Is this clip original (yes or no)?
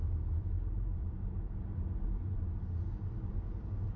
yes